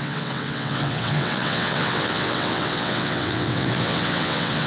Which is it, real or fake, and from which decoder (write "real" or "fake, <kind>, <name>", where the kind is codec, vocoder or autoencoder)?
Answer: fake, vocoder, WaveNeXt